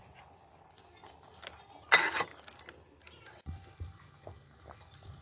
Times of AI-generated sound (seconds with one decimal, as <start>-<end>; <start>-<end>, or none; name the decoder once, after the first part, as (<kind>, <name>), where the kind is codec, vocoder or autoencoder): none